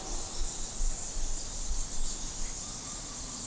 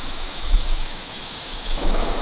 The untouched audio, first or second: first